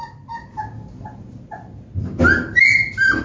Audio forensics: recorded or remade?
recorded